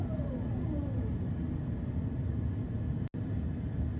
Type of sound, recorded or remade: recorded